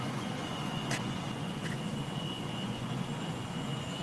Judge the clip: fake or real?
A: fake